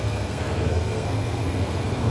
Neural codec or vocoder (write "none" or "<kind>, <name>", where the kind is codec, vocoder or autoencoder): codec, SNAC